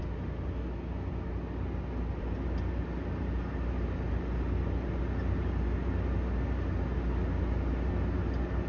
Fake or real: real